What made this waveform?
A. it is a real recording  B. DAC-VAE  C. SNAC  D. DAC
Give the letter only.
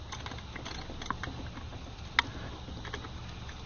A